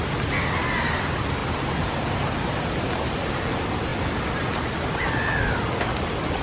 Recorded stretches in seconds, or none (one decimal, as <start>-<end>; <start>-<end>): 0.0-3.9; 4.5-6.4